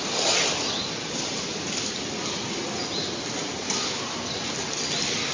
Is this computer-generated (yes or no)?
no